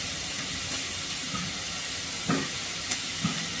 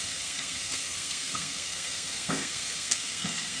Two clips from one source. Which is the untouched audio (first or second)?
first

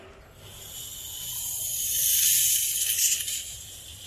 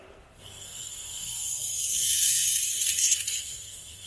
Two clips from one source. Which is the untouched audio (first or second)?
first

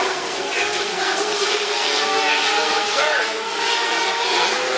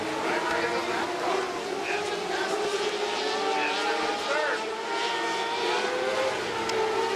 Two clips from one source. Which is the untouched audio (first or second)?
second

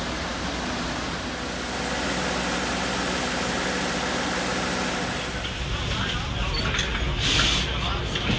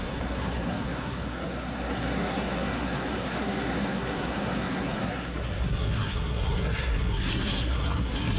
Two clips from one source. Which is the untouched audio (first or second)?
first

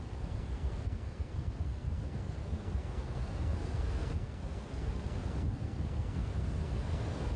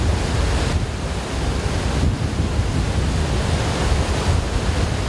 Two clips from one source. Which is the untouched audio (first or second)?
second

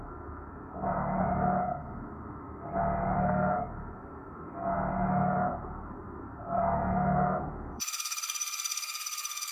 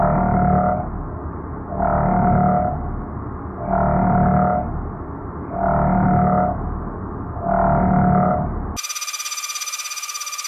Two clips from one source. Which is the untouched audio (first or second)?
second